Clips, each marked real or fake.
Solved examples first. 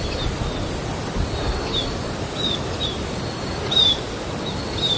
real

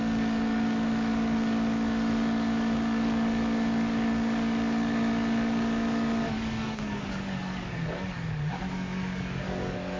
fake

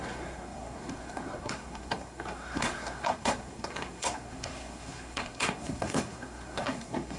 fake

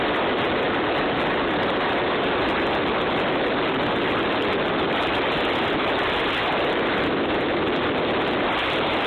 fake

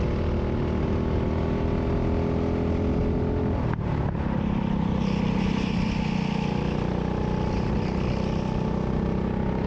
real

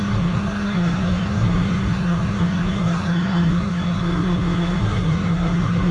fake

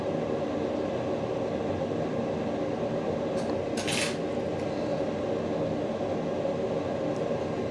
real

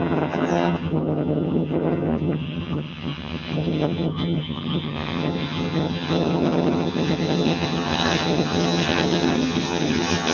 fake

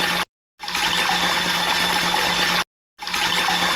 real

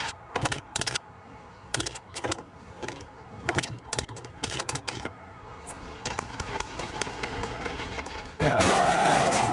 fake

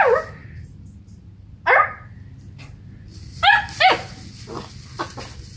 real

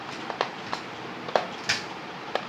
real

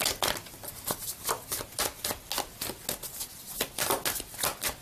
real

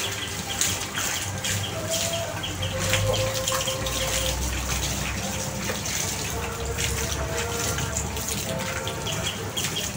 real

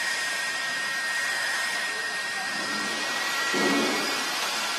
fake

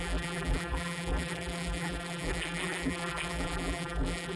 fake